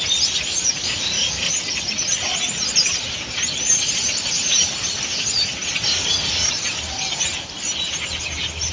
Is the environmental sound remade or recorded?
recorded